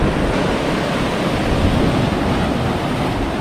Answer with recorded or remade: recorded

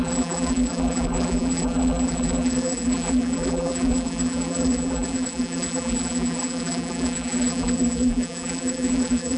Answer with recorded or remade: remade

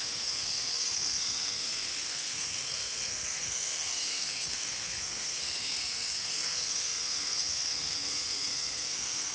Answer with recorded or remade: remade